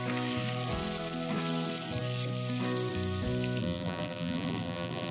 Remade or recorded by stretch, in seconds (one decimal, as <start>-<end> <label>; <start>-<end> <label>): 0.0-3.6 recorded; 3.6-5.1 remade